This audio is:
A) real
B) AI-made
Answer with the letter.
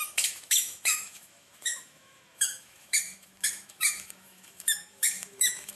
B